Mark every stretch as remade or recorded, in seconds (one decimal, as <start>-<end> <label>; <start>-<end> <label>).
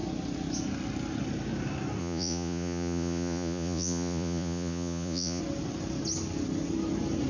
0.0-2.0 recorded; 2.0-5.4 remade; 5.4-7.3 recorded